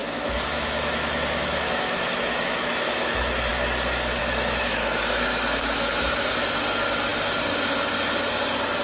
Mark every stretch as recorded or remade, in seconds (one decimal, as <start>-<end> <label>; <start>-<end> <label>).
0.0-3.5 remade; 3.5-4.2 recorded; 4.2-6.1 remade; 6.1-8.8 recorded